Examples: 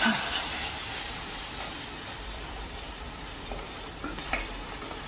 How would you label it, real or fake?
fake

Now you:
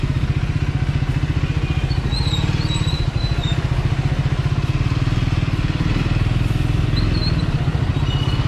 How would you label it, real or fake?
real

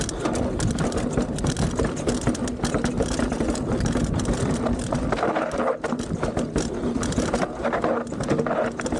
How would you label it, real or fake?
real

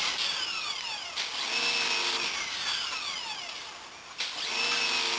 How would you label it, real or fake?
real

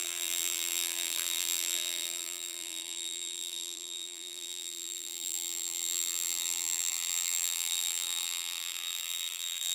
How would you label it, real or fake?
fake